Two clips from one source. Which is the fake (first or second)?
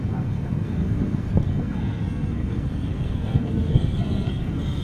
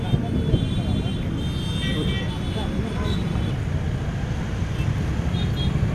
first